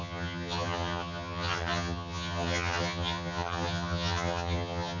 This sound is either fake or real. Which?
fake